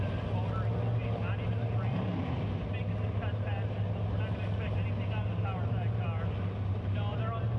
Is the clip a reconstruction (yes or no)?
no